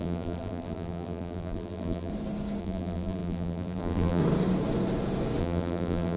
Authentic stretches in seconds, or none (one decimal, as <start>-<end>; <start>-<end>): 2.1-2.6; 4.2-5.4